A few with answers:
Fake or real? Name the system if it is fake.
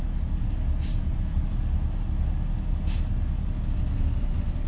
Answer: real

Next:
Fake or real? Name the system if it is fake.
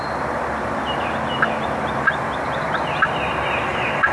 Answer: real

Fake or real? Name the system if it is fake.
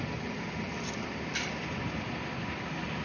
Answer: fake, vocoder, BigVGAN v2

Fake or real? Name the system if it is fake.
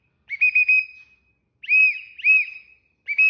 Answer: real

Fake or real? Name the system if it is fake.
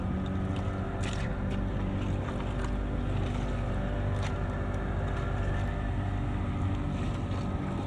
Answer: real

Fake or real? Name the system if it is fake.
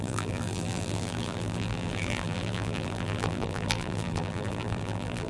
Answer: fake, vocoder, BigVGAN v2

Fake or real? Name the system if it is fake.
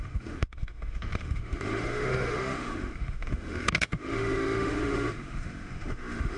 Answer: fake, autoencoder, DAC-VAE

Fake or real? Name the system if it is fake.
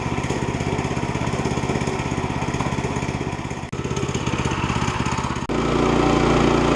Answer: real